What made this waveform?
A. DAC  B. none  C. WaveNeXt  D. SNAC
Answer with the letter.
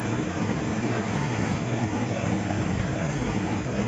D